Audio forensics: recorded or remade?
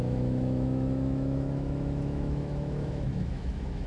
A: remade